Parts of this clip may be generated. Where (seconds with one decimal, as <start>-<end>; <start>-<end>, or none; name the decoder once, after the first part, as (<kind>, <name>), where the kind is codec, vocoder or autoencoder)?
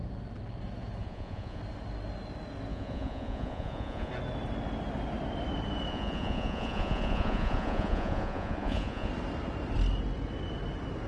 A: 1.0-1.6 (vocoder, Vocos); 2.7-4.1; 5.9-9.1